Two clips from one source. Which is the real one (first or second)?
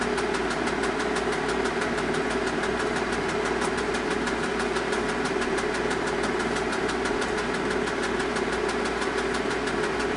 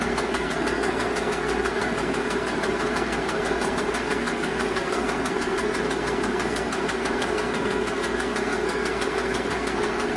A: first